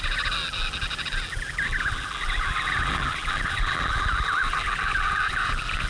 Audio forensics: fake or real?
fake